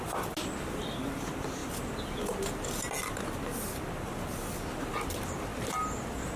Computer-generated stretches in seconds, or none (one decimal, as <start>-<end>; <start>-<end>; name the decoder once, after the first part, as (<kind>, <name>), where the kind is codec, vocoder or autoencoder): none